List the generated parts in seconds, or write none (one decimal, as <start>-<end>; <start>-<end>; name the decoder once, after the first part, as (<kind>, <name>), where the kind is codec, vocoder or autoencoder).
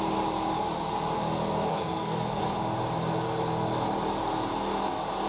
1.7-2.4 (codec, SNAC)